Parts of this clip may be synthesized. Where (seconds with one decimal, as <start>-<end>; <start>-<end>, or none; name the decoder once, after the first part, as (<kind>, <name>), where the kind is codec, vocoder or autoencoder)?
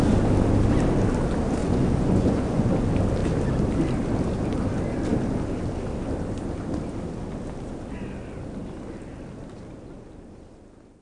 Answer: 1.6-2.7 (vocoder, Vocos)